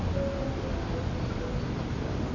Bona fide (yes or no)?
yes